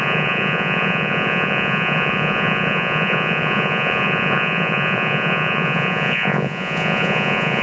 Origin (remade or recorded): remade